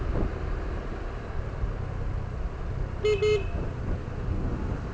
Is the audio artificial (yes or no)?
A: no